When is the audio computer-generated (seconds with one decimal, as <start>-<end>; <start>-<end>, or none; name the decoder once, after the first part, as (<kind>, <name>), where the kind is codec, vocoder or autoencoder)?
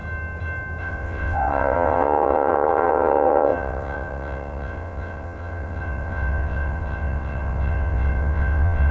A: 0.8-8.9 (vocoder, WaveNeXt)